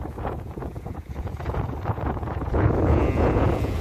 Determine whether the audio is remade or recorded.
remade